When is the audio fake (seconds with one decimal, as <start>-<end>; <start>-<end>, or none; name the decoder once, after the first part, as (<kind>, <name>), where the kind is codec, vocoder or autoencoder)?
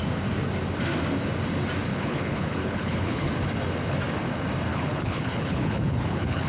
1.9-3.3 (codec, HILCodec); 4.7-6.5